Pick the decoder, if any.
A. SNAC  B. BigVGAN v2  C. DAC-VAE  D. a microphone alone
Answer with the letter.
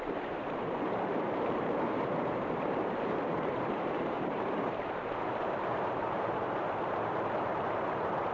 B